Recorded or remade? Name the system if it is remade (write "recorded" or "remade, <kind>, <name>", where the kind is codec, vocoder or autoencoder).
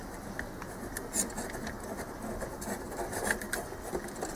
recorded